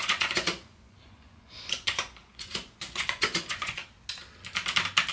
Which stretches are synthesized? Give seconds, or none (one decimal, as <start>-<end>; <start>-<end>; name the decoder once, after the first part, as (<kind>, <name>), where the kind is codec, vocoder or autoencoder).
0.0-3.8 (vocoder, Vocos)